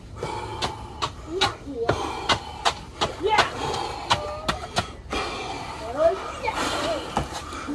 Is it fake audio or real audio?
real